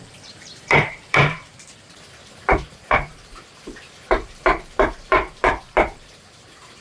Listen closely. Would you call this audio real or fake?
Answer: fake